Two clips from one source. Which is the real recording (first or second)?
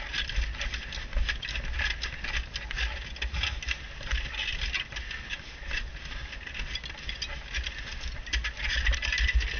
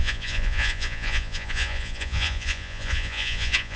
first